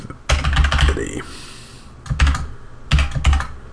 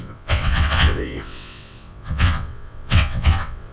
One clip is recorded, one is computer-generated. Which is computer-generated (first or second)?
second